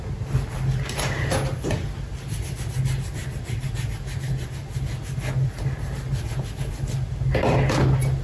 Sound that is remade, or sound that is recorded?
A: recorded